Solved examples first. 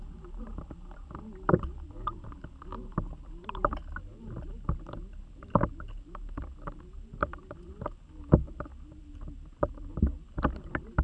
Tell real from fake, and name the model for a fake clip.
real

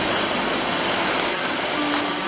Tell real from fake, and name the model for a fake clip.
real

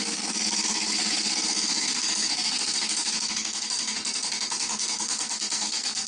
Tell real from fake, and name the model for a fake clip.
fake, codec, SNAC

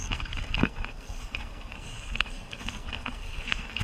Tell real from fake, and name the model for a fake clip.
fake, codec, SNAC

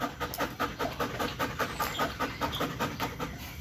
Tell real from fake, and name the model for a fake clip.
real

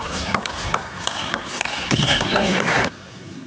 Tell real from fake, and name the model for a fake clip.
fake, codec, SNAC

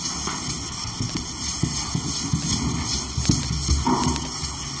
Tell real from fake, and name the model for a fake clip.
real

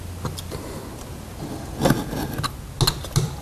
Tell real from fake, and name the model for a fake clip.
real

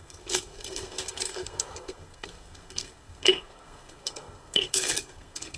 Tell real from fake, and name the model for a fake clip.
fake, codec, SNAC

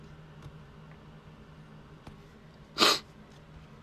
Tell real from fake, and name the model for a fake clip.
real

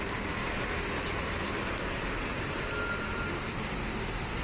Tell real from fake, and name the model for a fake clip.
real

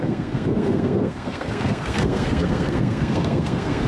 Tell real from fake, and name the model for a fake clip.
fake, codec, SNAC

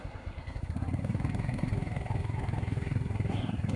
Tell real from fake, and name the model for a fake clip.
fake, codec, SNAC